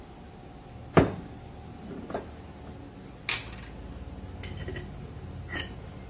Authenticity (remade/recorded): recorded